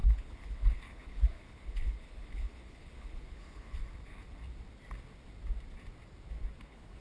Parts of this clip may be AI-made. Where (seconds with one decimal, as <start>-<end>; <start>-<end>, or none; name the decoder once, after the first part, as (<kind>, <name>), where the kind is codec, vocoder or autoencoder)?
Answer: 0.0-3.8 (codec, HILCodec); 6.6-7.0